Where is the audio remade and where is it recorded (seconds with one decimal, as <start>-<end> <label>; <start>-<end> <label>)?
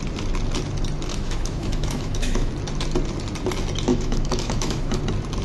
0.0-1.1 recorded; 1.1-2.5 remade; 2.5-3.9 recorded; 3.9-5.0 remade; 5.0-5.4 recorded